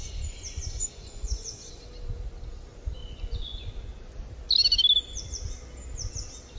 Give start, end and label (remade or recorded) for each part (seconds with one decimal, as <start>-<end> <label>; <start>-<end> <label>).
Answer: 0.0-1.7 remade; 1.7-3.0 recorded; 3.0-3.7 remade; 3.7-6.6 recorded